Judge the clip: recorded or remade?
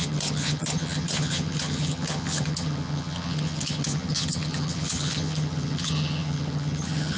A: remade